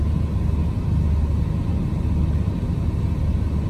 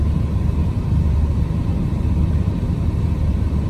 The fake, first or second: second